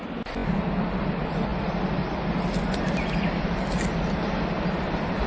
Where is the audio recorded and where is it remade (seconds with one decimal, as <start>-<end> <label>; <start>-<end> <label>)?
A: 0.0-5.3 recorded